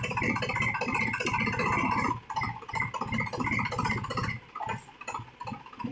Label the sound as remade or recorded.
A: recorded